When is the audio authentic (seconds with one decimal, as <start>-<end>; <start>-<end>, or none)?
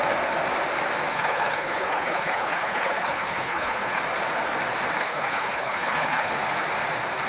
0.0-1.1; 4.0-5.0; 6.3-7.3